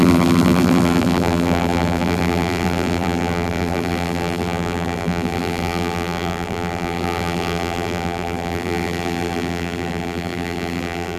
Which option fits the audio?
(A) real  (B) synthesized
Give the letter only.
B